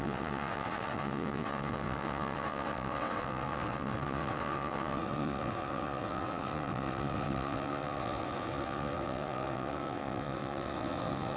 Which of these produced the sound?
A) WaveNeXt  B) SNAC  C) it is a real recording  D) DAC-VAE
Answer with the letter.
A